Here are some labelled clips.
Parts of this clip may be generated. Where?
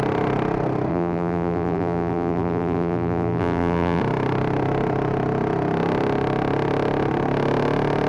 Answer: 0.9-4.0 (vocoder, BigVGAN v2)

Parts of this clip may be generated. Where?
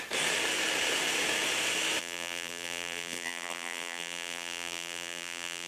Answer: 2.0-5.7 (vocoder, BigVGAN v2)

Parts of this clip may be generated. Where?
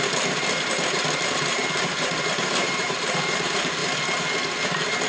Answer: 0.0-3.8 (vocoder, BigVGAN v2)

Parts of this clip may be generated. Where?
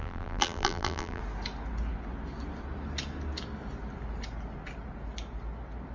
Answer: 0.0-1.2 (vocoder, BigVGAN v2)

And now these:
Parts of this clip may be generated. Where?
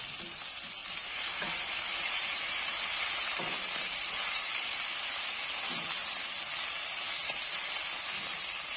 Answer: 0.8-4.9 (vocoder, BigVGAN v2)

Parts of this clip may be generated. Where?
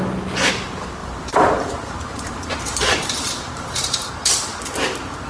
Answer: 1.0-4.1 (vocoder, BigVGAN v2)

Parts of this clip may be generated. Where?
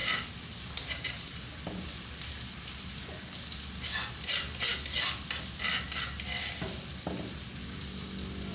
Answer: none